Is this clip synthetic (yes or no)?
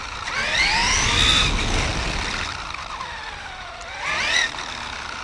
no